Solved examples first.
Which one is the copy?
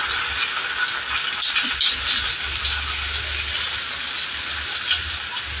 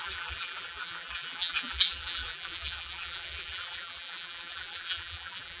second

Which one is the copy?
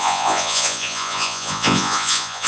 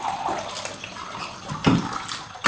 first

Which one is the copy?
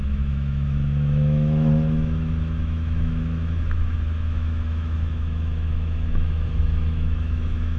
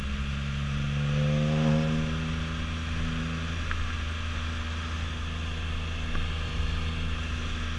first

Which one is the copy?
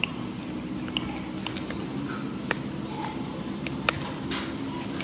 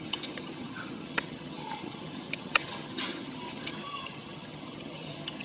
second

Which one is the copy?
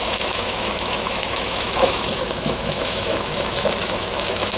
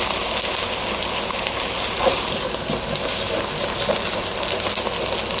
first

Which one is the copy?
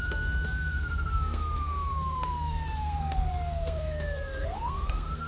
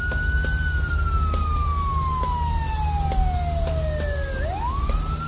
first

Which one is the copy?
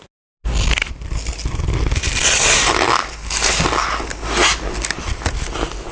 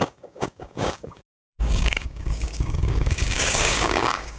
second